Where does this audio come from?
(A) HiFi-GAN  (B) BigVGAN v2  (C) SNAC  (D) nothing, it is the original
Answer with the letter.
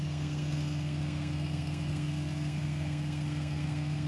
C